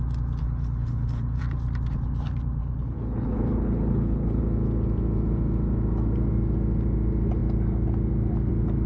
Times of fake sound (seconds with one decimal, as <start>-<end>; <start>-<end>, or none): 0.4-1.4; 2.6-4.4

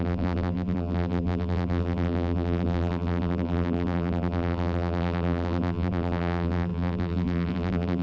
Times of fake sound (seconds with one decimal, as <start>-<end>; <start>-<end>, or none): 0.0-8.0